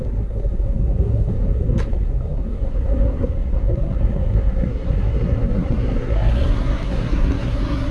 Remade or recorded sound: remade